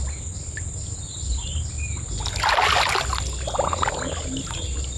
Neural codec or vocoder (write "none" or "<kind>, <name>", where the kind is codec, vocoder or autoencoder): none